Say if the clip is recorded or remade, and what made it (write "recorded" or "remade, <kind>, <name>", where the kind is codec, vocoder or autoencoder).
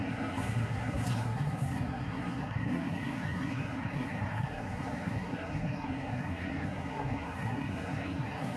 remade, codec, SNAC